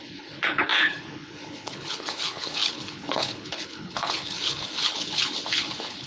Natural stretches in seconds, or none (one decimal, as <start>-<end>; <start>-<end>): none